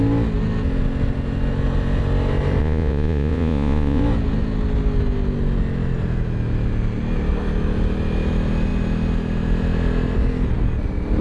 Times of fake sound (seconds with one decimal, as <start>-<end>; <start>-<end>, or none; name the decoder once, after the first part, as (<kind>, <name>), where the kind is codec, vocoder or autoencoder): 2.6-4.0 (vocoder, Vocos)